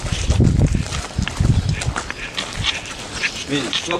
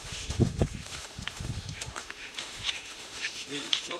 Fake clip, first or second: second